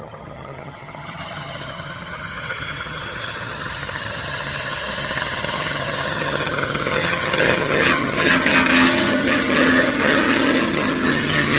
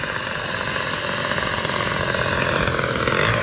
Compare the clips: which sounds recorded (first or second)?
second